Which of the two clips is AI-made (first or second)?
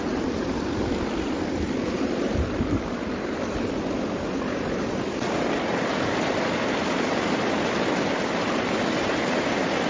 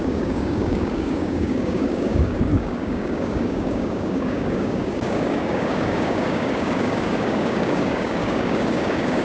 second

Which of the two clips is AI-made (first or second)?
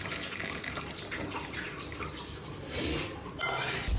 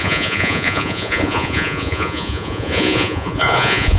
second